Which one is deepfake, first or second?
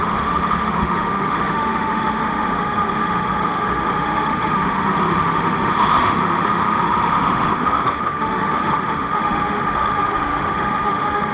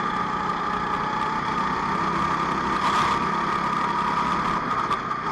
first